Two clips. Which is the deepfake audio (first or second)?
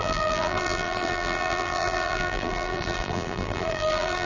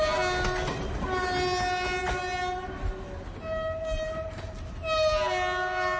first